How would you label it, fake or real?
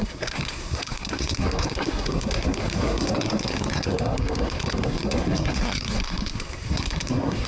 fake